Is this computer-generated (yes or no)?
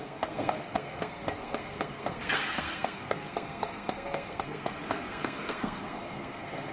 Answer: yes